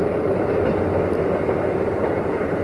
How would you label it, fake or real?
real